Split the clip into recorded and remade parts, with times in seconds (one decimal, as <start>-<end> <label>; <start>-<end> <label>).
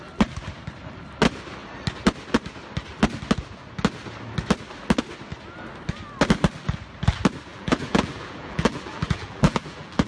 0.0-7.5 recorded; 7.5-10.1 remade